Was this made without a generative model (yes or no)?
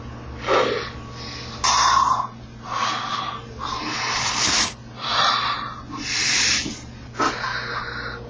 yes